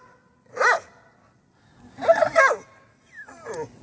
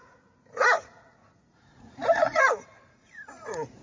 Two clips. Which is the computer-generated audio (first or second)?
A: second